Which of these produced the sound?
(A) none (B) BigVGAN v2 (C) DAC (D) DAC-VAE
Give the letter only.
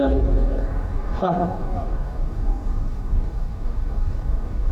C